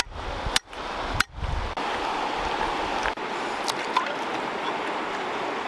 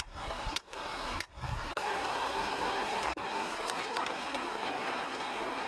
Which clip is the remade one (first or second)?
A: second